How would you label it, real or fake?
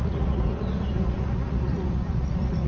fake